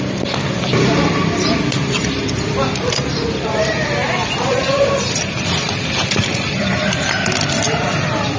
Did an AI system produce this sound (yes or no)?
yes